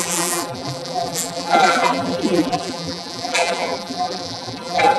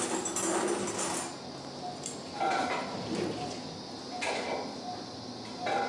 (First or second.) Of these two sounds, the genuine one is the second